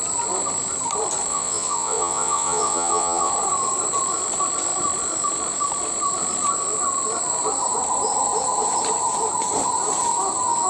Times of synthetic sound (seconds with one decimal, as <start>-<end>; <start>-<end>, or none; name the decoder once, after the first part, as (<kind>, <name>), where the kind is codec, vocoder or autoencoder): 1.3-3.3 (vocoder, Vocos)